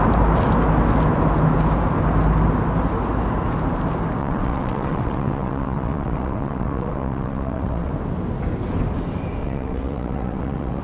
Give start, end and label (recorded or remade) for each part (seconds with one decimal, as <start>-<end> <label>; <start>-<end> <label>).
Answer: 0.0-4.2 recorded; 4.2-7.9 remade; 7.9-9.4 recorded; 9.4-10.8 remade